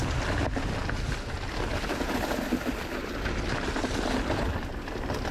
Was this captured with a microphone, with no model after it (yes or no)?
yes